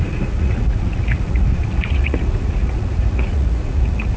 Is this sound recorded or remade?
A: remade